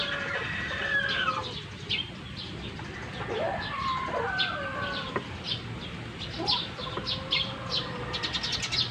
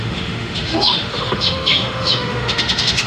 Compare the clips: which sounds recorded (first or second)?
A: first